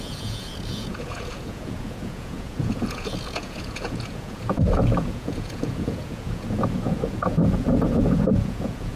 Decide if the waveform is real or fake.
fake